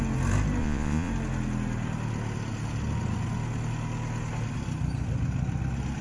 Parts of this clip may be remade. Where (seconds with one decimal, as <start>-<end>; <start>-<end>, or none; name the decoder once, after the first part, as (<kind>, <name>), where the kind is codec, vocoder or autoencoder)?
0.6-1.1 (vocoder, Vocos)